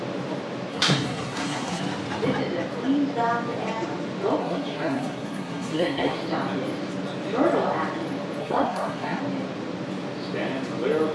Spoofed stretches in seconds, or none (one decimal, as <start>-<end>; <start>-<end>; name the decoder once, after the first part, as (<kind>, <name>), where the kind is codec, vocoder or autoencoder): 0.7-1.8 (codec, SNAC); 4.4-6.2; 8.4-9.2